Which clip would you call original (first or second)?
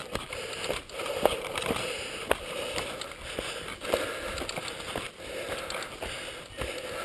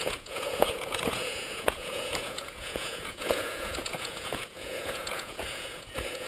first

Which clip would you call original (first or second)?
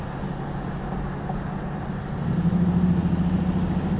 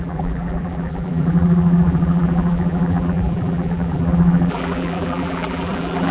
first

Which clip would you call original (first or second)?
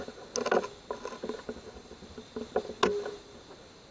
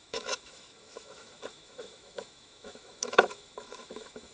first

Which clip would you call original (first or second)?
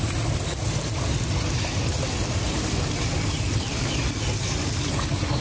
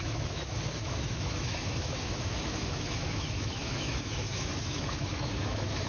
first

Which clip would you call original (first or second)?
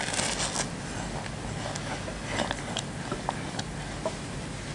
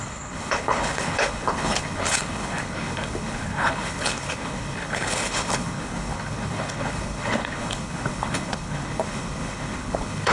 first